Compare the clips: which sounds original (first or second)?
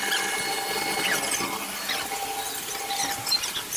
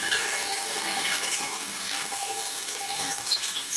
first